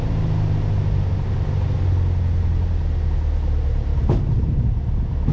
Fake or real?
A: real